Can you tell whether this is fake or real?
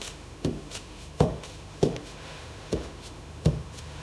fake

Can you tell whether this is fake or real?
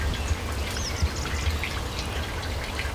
real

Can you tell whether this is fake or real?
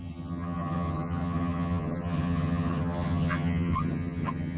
fake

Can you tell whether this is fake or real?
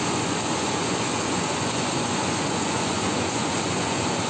fake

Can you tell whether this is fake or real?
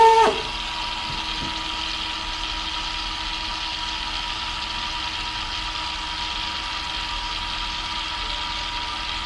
real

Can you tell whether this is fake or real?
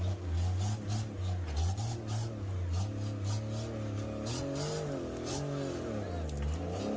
real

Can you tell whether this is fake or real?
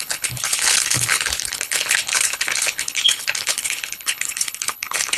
fake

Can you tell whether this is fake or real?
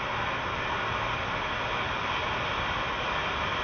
real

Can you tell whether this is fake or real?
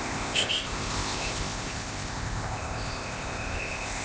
fake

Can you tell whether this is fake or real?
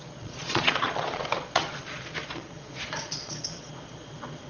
fake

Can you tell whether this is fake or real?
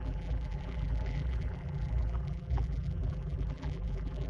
fake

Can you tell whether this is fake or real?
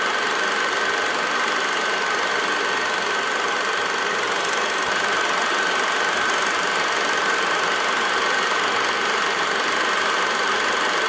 real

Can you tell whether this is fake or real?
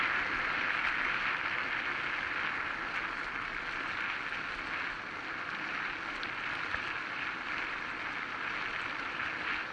real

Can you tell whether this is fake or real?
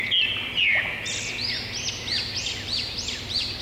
real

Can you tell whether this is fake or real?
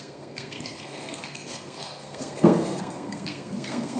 fake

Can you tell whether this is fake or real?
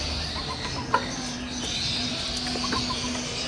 real